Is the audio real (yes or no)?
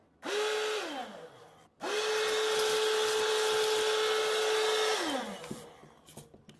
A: yes